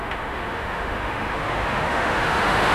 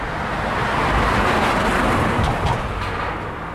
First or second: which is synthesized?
first